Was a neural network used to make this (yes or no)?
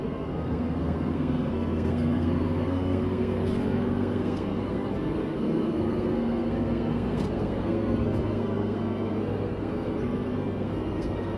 yes